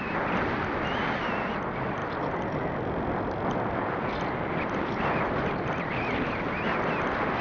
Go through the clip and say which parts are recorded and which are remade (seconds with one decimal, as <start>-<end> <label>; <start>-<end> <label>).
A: 0.0-7.4 recorded